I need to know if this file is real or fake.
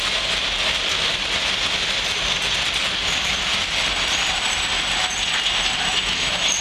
real